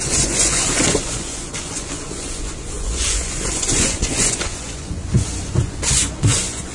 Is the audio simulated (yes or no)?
yes